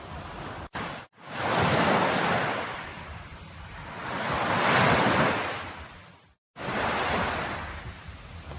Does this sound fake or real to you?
real